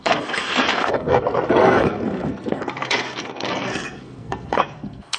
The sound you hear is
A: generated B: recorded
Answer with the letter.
A